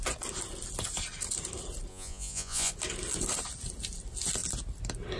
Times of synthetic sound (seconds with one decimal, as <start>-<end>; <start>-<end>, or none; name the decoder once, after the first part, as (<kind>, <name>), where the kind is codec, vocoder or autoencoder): 1.9-2.7 (vocoder, Vocos)